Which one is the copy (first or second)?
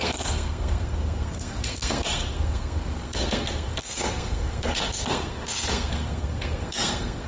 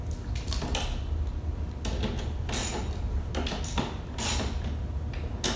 first